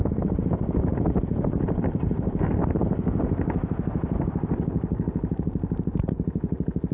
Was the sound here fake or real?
real